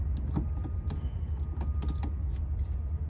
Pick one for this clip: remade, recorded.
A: recorded